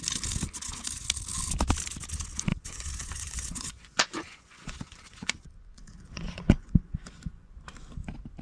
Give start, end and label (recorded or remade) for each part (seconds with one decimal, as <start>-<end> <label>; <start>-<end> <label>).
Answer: 0.0-2.5 recorded; 2.5-7.5 remade; 7.5-8.4 recorded